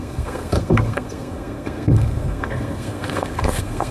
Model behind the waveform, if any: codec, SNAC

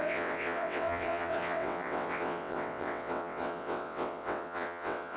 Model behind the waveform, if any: vocoder, WaveNeXt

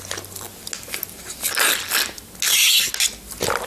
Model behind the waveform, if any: none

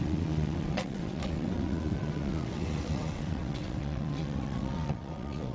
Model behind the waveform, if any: vocoder, WaveNeXt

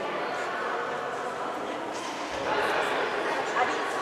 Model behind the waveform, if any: none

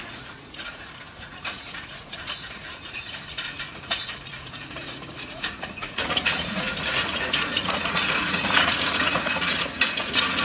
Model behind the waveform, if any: vocoder, Vocos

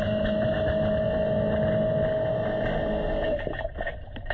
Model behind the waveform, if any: none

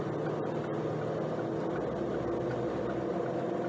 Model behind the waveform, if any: none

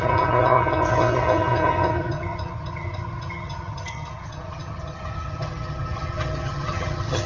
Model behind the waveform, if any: vocoder, HiFi-GAN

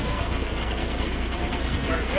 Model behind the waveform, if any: codec, SNAC